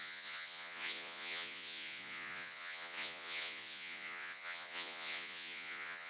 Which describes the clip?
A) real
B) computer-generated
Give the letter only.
B